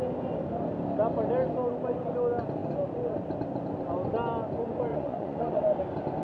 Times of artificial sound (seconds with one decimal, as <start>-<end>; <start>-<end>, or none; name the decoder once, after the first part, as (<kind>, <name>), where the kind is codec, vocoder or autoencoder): 4.9-5.6 (vocoder, Vocos)